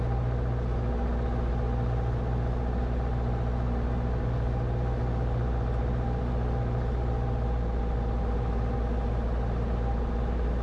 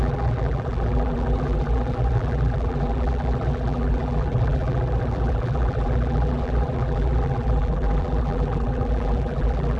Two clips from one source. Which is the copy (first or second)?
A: second